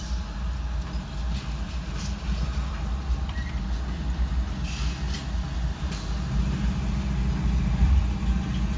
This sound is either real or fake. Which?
real